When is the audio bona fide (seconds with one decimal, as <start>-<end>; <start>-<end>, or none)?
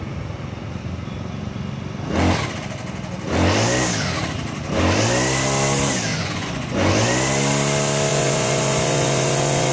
0.0-6.1; 6.9-8.1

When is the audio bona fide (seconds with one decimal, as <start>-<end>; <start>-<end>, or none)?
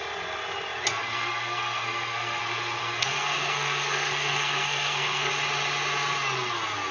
0.0-1.0; 2.4-2.8; 5.3-6.9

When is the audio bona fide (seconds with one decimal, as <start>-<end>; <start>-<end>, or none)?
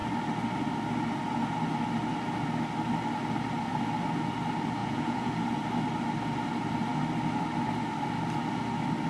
0.0-4.8; 5.3-9.1